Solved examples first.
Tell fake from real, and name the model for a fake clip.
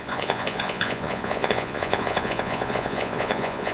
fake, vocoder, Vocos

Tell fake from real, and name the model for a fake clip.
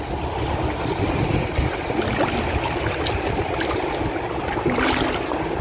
real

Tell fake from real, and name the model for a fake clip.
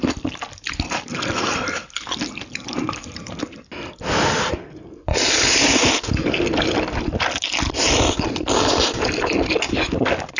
real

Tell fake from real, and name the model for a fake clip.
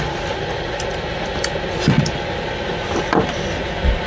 real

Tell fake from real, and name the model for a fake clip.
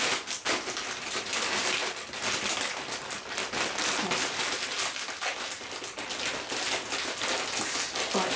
real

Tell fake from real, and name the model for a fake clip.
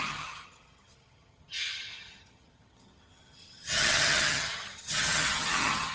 fake, vocoder, HiFi-GAN